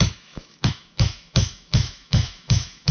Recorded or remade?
remade